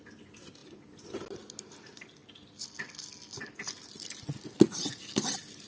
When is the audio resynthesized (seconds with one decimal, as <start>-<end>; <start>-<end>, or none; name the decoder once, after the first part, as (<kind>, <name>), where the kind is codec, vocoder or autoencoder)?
none